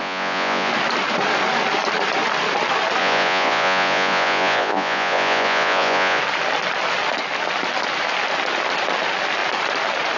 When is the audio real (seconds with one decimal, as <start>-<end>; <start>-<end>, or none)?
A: 0.7-3.0; 6.2-10.2